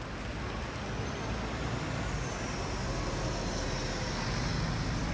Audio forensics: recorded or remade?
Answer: recorded